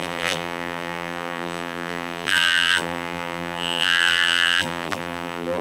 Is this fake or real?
fake